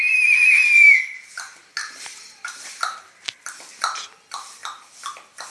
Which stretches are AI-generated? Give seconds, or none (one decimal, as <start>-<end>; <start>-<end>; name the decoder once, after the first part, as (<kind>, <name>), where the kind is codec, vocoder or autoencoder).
1.8-5.1 (vocoder, BigVGAN v2)